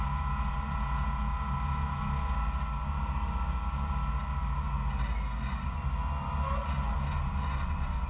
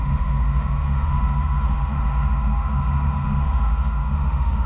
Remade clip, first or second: second